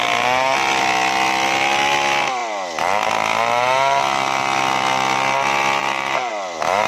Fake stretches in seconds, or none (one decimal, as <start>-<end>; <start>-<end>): 5.8-6.3